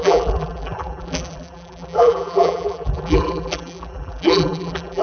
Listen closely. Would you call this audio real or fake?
fake